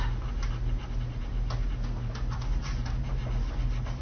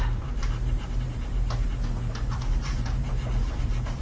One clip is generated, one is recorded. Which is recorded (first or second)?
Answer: first